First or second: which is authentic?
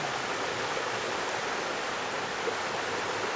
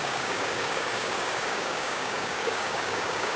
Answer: first